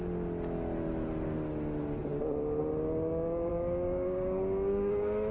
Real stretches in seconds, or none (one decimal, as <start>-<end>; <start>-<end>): 0.0-3.5